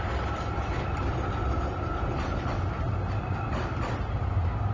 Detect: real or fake real